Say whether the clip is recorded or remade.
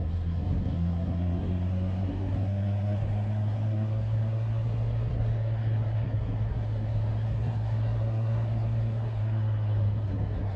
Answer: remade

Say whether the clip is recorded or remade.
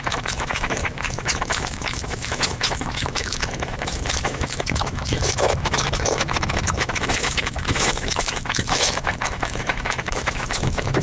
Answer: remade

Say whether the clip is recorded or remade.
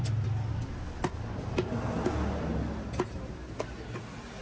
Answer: recorded